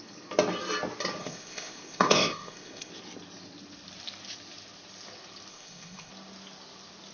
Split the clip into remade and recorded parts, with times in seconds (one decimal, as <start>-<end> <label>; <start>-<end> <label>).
0.0-1.2 recorded; 1.2-2.9 remade; 2.9-5.5 recorded; 5.5-6.1 remade; 6.1-7.1 recorded